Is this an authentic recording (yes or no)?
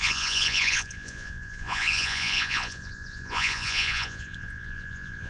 no